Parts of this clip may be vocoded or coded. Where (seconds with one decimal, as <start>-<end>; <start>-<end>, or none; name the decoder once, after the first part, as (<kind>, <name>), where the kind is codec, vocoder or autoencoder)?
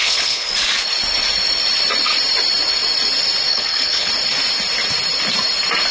0.0-0.5 (codec, HILCodec); 3.5-4.1